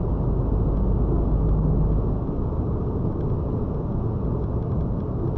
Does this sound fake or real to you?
real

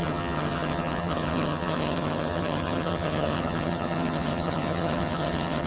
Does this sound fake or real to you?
fake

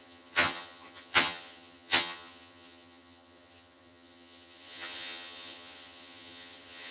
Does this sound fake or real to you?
fake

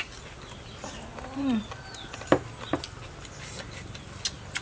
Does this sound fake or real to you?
real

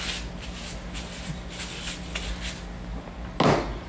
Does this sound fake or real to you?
real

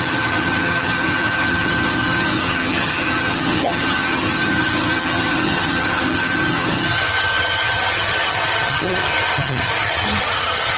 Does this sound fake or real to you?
fake